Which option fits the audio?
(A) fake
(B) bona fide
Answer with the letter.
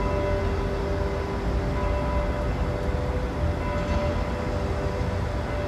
B